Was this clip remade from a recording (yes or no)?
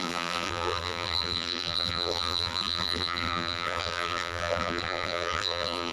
yes